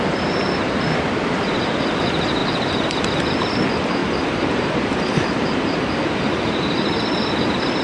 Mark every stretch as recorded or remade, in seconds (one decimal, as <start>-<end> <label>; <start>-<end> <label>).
0.0-4.0 recorded; 4.0-5.9 remade; 5.9-7.8 recorded